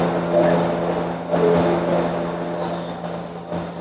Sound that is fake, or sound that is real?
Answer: real